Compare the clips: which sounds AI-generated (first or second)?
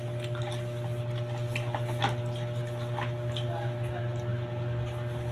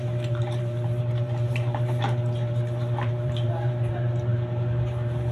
second